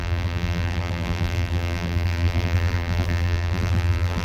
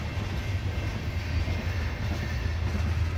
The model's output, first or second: first